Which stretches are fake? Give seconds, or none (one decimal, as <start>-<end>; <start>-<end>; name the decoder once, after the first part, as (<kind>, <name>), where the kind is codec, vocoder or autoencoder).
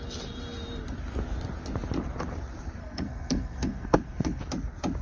2.8-4.4 (codec, SNAC)